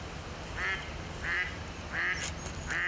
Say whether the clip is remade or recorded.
recorded